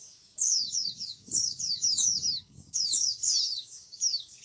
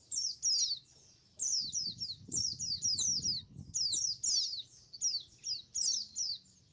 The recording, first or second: second